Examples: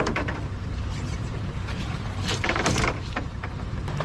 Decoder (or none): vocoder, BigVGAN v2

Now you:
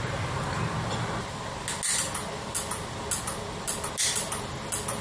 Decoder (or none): none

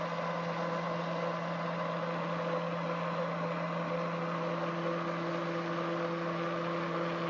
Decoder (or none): none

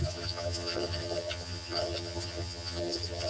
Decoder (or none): vocoder, HiFi-GAN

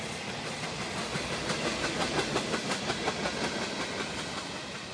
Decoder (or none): none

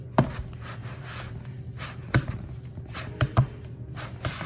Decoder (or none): none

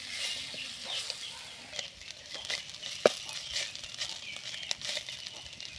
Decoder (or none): none